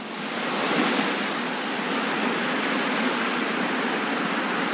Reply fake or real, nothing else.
real